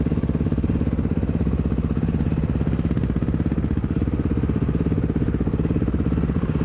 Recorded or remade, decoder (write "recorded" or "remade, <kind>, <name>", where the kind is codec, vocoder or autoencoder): recorded